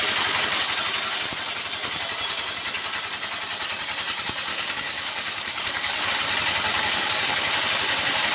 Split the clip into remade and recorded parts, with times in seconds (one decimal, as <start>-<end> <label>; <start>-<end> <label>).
0.0-4.5 recorded; 4.5-6.1 remade; 6.1-6.7 recorded; 6.7-7.5 remade; 7.5-8.3 recorded